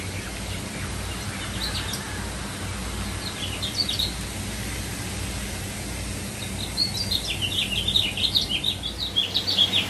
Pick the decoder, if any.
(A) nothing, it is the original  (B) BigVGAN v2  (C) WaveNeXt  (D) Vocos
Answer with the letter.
A